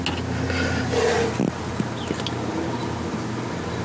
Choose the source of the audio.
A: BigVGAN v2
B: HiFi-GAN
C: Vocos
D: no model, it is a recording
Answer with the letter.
D